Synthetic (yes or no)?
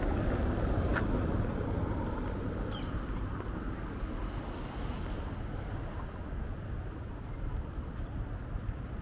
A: no